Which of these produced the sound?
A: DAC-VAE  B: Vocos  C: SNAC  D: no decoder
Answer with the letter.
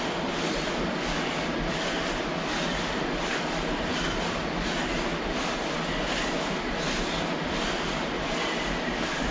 D